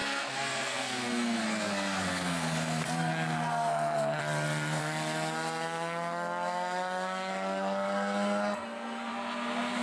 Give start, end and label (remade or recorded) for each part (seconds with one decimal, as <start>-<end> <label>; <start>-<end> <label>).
0.0-4.2 remade; 4.2-4.8 recorded; 4.8-9.1 remade; 9.1-9.8 recorded